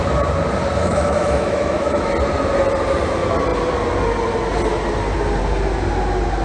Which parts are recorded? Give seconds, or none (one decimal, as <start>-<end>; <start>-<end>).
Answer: 0.0-0.8; 2.1-6.4